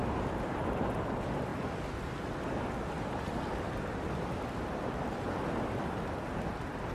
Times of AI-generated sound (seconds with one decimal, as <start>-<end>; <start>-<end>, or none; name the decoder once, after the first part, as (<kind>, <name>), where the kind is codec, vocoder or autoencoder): none